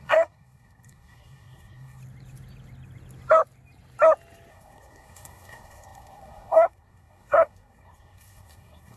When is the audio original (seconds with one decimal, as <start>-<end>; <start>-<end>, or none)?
2.0-4.5